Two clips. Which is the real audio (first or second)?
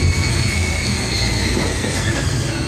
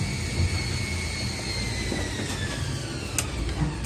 second